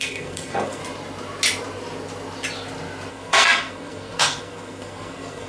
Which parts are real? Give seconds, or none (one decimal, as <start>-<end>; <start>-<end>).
0.8-3.1